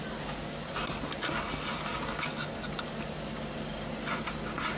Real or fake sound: real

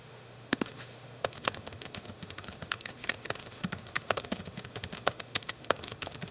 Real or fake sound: fake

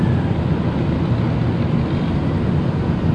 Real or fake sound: real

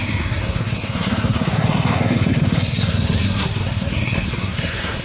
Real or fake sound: fake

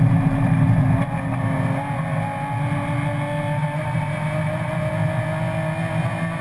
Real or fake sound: real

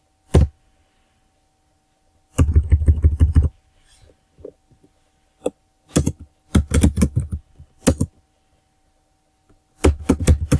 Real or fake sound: real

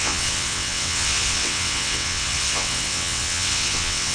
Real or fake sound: fake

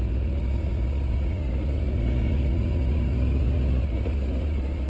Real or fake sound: fake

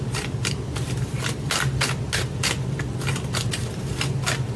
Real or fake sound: real